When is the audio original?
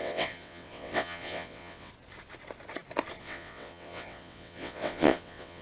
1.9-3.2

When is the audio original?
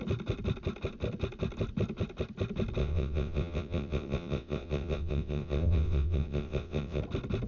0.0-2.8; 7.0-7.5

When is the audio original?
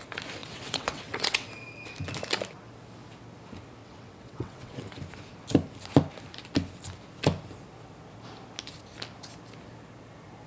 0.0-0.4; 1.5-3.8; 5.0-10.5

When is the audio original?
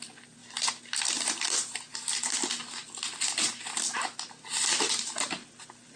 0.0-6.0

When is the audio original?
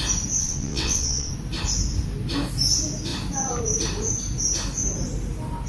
0.0-0.4; 1.3-5.7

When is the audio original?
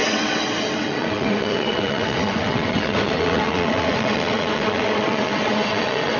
none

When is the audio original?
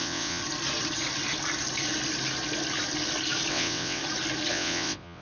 0.4-3.5; 4.0-4.5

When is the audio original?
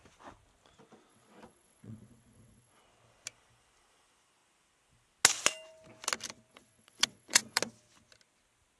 0.0-1.1; 2.8-6.5; 7.6-8.8